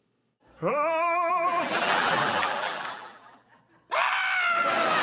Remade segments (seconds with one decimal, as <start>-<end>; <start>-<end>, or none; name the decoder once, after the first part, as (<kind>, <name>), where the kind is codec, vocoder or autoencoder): 0.6-3.6 (vocoder, BigVGAN v2)